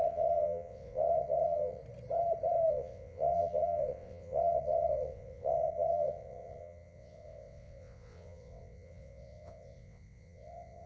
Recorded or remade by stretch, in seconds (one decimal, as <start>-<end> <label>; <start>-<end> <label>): 0.0-1.8 remade; 1.8-2.7 recorded; 2.7-10.9 remade